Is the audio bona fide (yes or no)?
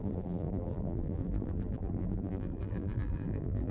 no